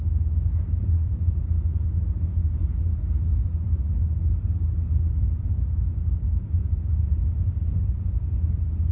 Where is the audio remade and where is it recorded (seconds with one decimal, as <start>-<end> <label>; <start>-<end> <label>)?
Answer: 0.0-6.6 recorded; 6.6-7.2 remade; 7.2-8.9 recorded